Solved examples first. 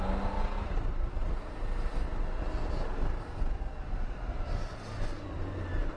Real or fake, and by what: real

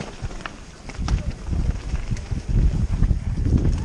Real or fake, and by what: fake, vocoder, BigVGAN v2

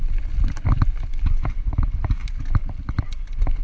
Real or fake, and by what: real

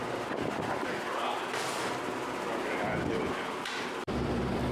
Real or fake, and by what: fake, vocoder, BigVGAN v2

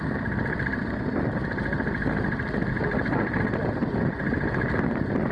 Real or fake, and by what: real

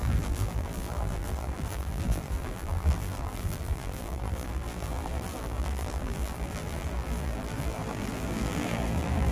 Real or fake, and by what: fake, vocoder, BigVGAN v2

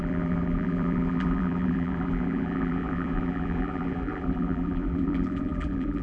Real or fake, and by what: fake, vocoder, BigVGAN v2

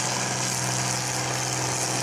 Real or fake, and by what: real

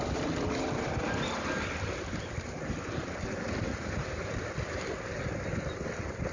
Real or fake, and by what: fake, vocoder, BigVGAN v2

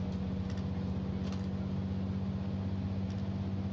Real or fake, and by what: real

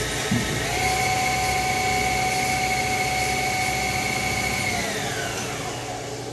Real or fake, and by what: real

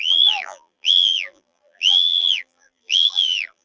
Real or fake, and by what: fake, vocoder, BigVGAN v2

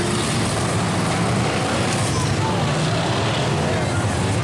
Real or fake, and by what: real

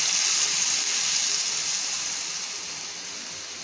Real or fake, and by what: real